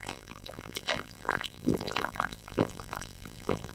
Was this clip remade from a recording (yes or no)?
yes